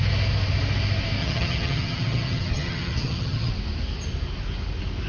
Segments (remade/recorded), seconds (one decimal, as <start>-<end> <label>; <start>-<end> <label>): 0.0-1.2 recorded; 1.2-3.5 remade; 3.5-5.1 recorded